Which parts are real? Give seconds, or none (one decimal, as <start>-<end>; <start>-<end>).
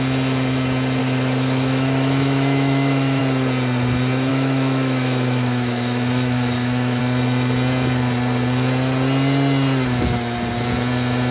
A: 0.0-1.0; 3.2-4.3; 7.0-11.3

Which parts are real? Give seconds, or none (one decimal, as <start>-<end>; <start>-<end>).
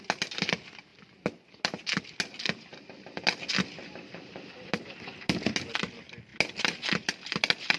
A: 0.0-7.8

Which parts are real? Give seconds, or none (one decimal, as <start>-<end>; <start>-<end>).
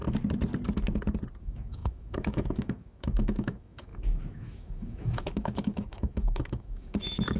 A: 0.0-1.4